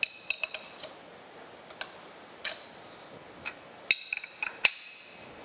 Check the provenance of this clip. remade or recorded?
recorded